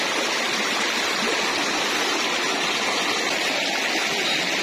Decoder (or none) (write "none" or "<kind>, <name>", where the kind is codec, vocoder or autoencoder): none